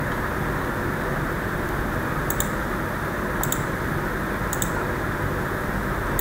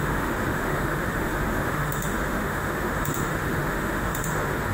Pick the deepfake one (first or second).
second